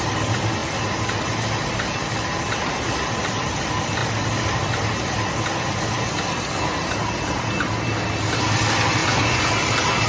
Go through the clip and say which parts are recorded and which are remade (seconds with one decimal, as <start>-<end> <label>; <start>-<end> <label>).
0.0-9.0 recorded; 9.0-9.5 remade; 9.5-10.1 recorded